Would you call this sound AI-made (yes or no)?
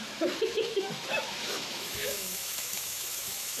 yes